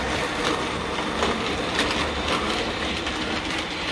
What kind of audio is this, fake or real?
real